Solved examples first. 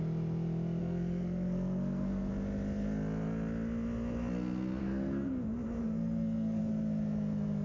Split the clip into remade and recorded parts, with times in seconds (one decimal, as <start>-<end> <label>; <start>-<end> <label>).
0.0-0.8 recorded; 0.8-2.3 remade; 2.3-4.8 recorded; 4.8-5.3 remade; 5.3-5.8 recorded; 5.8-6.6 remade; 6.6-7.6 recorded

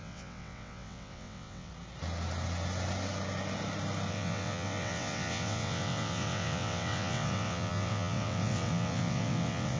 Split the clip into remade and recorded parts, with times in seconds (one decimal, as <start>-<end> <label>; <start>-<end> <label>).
0.0-1.7 remade; 1.7-4.1 recorded; 4.1-9.8 remade

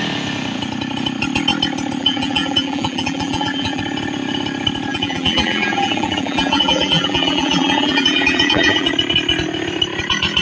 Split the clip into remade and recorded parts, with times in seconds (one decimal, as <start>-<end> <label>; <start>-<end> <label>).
0.0-2.0 recorded; 2.0-3.8 remade; 3.8-4.9 recorded; 4.9-8.9 remade; 8.9-10.4 recorded

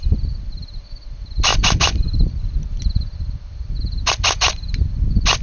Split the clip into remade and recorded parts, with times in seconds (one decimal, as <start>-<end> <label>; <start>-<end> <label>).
0.0-5.4 recorded